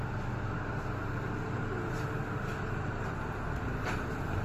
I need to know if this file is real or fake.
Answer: real